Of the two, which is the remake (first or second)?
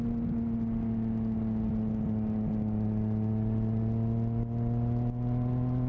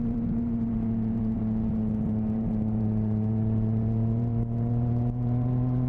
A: second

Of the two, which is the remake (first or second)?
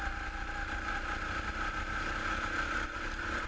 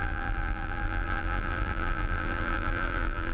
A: second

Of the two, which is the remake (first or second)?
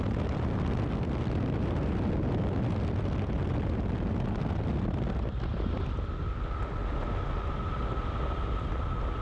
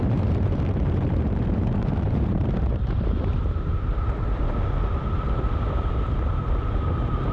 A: second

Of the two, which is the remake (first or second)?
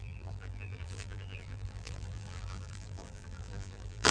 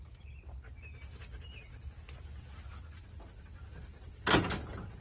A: first